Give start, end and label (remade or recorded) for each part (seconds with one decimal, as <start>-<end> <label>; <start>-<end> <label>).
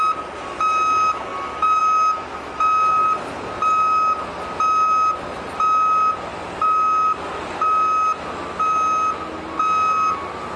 0.0-10.6 recorded